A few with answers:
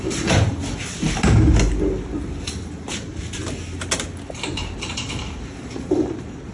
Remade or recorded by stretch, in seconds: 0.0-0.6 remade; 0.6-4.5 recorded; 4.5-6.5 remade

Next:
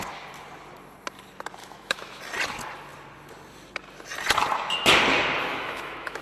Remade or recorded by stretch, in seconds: 0.0-1.6 recorded; 1.6-2.2 remade; 2.2-5.5 recorded; 5.5-6.2 remade

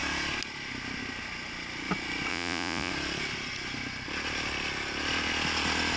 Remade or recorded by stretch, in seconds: 0.0-2.3 recorded; 2.3-2.9 remade; 2.9-6.0 recorded